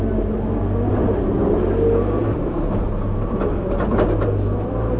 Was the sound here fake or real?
real